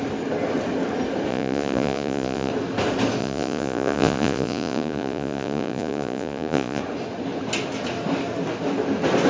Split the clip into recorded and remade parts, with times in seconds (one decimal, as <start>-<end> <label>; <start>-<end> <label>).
0.0-1.3 recorded; 1.3-2.5 remade; 2.5-3.2 recorded; 3.2-6.8 remade; 6.8-9.3 recorded